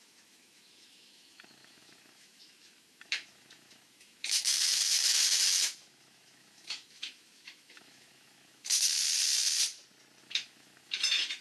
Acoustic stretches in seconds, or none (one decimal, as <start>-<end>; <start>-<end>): 8.9-10.2